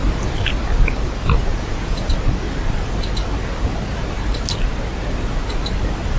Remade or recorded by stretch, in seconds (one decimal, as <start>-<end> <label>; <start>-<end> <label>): 0.0-1.5 recorded; 1.5-2.1 remade; 2.1-6.2 recorded